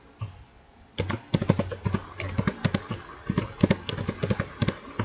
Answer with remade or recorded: recorded